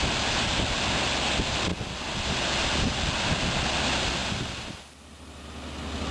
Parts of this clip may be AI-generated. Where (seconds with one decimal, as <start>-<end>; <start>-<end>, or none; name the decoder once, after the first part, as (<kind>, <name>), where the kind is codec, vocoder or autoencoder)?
none